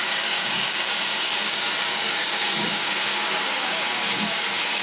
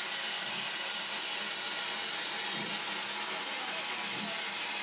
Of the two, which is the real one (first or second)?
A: second